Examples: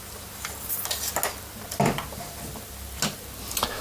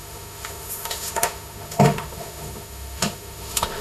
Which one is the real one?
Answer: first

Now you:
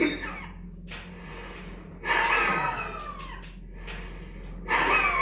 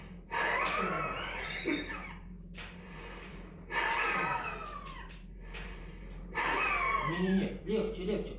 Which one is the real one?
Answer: first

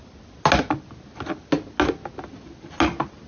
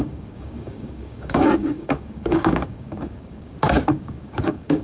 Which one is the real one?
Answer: first